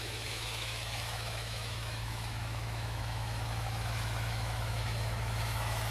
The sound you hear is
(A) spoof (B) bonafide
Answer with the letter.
A